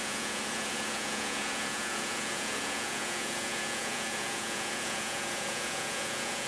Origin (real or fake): fake